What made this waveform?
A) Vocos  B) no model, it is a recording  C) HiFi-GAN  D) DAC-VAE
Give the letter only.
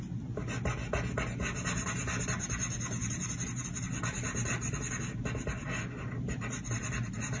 B